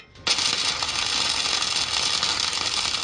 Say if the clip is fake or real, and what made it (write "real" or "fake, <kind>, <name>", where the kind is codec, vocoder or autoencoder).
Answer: real